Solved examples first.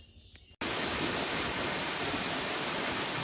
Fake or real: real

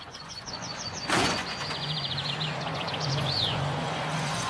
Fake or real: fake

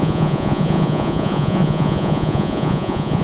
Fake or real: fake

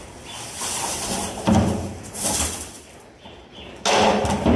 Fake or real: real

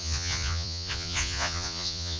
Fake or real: fake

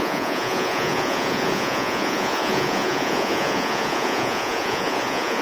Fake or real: fake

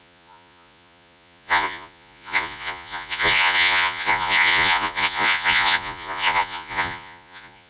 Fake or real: fake